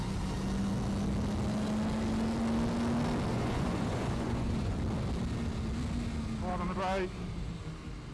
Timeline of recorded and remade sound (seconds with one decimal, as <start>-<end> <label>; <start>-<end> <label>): 0.0-3.3 recorded; 3.3-4.8 remade; 4.8-8.1 recorded